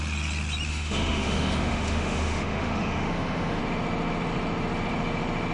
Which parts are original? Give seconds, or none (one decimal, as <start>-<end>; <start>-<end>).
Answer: 0.0-0.7; 3.6-5.5